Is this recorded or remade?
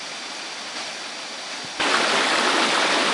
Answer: recorded